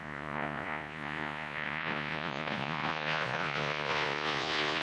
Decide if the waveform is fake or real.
fake